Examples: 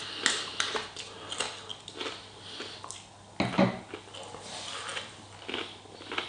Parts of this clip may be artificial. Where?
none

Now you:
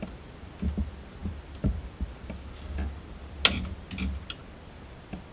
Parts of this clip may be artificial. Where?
none

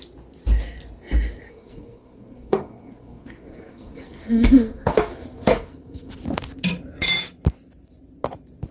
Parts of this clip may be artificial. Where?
1.5-6.1